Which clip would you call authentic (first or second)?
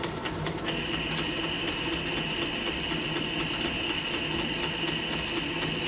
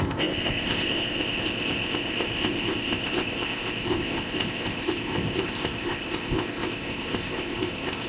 first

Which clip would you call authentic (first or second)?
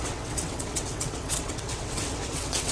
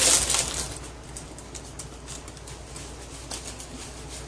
second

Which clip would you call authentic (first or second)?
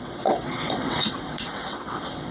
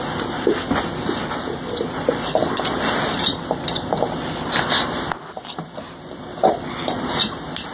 second